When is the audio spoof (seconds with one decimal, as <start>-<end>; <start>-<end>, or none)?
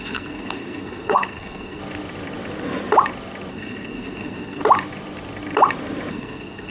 0.0-1.8; 3.5-4.6; 6.1-6.7